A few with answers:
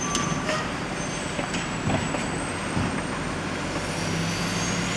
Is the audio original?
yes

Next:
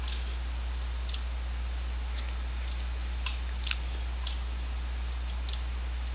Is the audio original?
yes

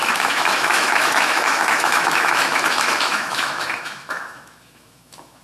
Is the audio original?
no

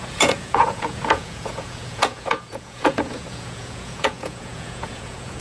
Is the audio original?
no